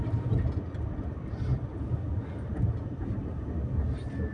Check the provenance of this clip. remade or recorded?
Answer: recorded